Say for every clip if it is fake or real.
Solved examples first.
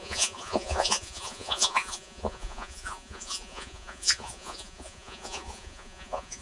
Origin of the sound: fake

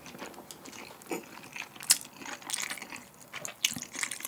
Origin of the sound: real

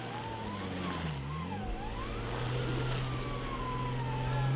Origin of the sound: real